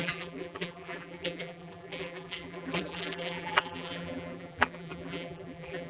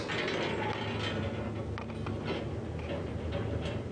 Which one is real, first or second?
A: second